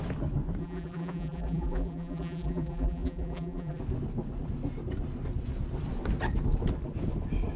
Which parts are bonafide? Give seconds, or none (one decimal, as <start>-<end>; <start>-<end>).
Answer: 0.0-0.6; 3.8-7.6